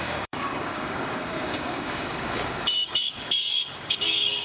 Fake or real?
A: fake